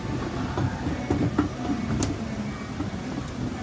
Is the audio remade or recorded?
recorded